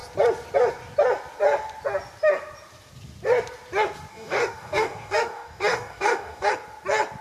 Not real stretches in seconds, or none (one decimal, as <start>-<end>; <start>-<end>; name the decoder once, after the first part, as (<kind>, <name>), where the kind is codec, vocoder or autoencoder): 4.1-6.5 (codec, DAC)